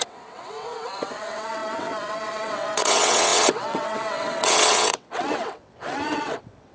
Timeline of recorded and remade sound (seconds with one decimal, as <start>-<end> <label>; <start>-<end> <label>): 0.0-6.7 remade